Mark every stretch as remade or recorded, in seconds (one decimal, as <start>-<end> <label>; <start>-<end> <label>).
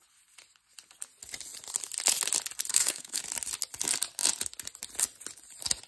0.0-2.7 recorded; 2.7-3.2 remade; 3.2-5.9 recorded